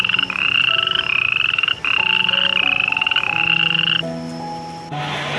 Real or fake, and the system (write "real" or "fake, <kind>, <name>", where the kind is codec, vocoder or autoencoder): real